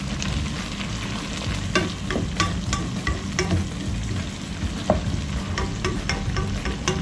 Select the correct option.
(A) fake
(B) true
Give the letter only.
B